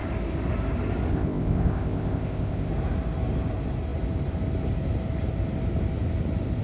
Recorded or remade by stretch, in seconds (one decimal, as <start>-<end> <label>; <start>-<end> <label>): 0.0-1.1 recorded; 1.1-2.7 remade; 2.7-6.6 recorded